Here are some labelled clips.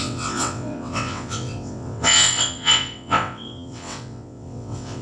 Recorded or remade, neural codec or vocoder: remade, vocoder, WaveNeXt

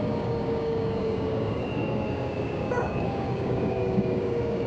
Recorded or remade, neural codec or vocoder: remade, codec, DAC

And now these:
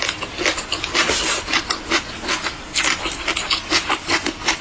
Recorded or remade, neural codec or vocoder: recorded